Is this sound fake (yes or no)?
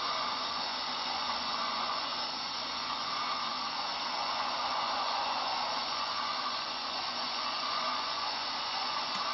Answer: yes